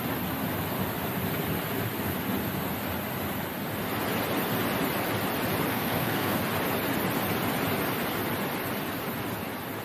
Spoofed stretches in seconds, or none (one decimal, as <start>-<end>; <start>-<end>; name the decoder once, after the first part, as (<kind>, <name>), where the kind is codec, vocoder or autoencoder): 5.7-6.4 (codec, SNAC)